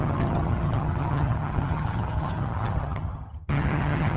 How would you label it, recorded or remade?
remade